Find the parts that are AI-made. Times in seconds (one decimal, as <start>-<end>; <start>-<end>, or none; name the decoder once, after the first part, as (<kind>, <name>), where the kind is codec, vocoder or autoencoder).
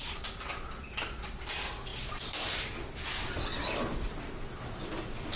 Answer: none